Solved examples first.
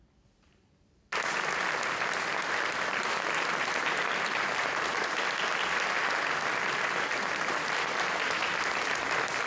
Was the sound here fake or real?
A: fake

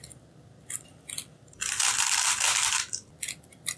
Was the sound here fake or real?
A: real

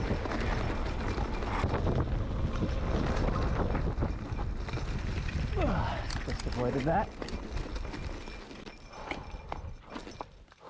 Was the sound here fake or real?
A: real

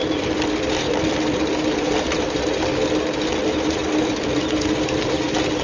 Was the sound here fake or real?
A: real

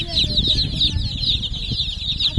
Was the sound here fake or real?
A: real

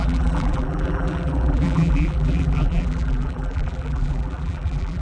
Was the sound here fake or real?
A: fake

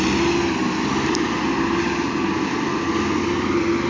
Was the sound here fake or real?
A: real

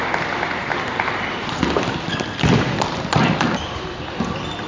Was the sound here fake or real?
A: real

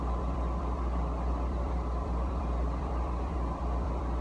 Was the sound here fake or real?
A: fake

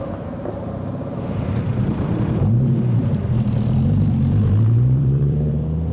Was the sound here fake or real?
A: fake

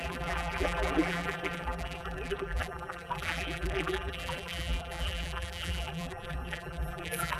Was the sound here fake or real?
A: fake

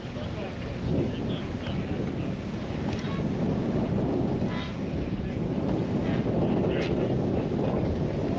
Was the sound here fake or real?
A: real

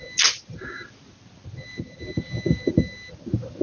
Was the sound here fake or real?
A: real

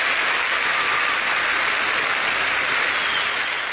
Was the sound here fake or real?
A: real